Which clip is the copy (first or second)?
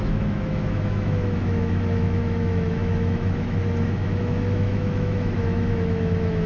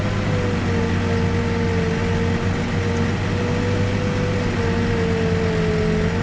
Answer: first